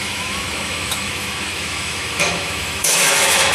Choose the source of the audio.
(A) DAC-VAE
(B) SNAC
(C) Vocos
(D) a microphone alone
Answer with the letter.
A